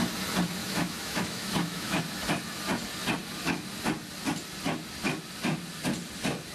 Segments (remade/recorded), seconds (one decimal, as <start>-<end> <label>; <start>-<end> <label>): 0.0-0.6 recorded; 0.6-2.0 remade; 2.0-6.5 recorded